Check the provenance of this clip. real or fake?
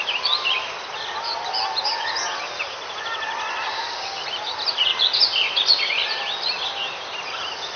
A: real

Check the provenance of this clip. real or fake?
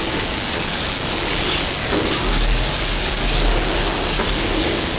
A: fake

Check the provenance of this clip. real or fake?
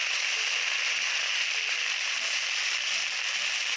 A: real